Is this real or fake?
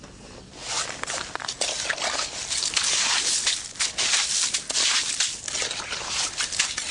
real